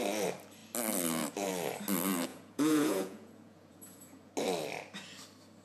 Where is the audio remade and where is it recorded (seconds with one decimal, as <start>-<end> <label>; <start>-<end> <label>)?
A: 0.0-2.3 recorded; 2.3-4.3 remade; 4.3-5.6 recorded